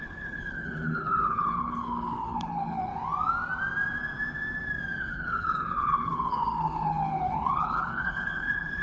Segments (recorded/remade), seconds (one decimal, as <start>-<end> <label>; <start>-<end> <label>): 0.0-2.9 remade; 2.9-5.0 recorded; 5.0-8.8 remade

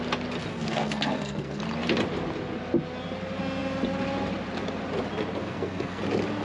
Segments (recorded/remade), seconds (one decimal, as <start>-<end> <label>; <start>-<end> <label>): 0.0-0.5 recorded; 0.5-1.6 remade; 1.6-5.4 recorded; 5.4-6.0 remade; 6.0-6.4 recorded